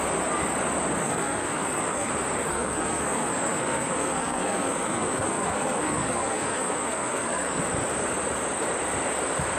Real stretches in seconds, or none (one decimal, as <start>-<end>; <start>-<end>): 0.0-1.0; 2.1-2.5; 7.6-9.6